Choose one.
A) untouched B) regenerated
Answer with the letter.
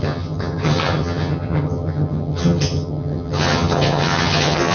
B